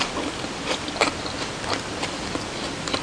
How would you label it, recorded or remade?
recorded